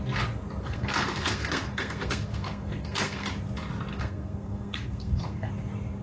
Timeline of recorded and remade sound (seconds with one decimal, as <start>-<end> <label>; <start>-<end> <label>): 0.0-0.6 recorded; 0.6-3.3 remade; 3.3-3.9 recorded; 3.9-5.5 remade; 5.5-6.0 recorded